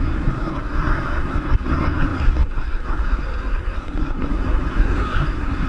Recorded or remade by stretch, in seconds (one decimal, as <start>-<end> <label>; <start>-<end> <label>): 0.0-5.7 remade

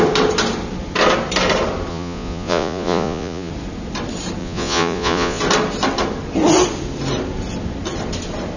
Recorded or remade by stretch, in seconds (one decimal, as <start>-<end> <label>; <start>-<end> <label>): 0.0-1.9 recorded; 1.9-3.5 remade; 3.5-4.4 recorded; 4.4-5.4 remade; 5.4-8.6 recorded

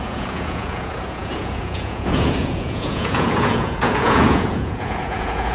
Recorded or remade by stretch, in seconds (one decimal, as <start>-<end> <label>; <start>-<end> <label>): 0.0-5.5 remade

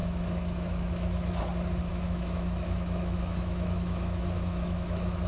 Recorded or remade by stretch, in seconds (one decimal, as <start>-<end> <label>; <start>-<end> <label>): 0.0-1.4 remade; 1.4-1.9 recorded; 1.9-5.3 remade

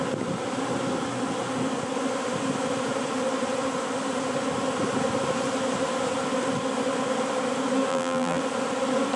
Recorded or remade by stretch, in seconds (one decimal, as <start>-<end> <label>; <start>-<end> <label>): 0.0-7.9 recorded; 7.9-8.4 remade; 8.4-9.2 recorded